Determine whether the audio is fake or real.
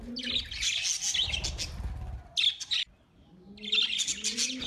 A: real